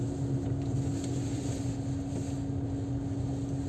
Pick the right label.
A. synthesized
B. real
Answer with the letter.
B